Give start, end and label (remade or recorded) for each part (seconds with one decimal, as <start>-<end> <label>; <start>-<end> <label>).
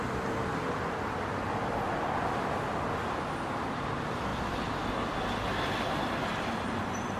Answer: 0.0-7.2 recorded